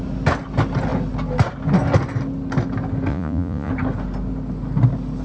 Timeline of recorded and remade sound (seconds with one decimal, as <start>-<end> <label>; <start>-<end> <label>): 0.0-3.1 recorded; 3.1-3.7 remade; 3.7-5.2 recorded